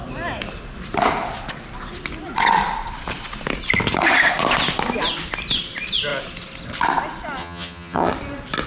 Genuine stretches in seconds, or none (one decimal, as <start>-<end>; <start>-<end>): 0.0-7.4; 8.1-8.7